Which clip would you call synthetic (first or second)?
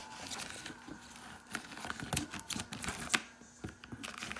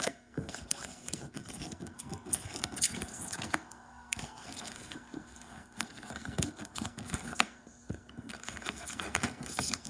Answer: second